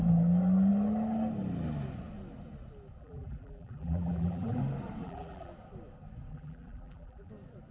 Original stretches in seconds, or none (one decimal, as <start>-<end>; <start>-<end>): 0.0-3.0; 4.6-5.0; 5.5-6.3; 7.3-7.7

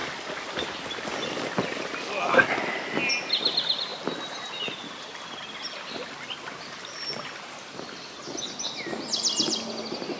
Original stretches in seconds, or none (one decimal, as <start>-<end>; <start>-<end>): 0.0-10.2

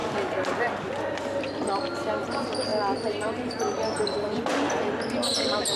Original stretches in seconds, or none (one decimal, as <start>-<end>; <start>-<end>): 1.0-2.7; 4.4-5.8

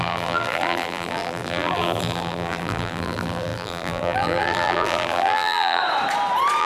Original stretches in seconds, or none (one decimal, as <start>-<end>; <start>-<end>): 5.8-6.6

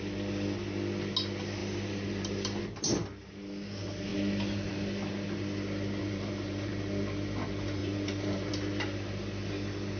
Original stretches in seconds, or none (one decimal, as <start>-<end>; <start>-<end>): 0.0-1.6; 2.6-6.0; 6.7-7.8; 8.5-10.0

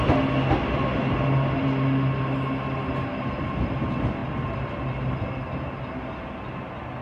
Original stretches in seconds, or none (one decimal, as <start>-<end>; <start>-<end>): 0.0-7.0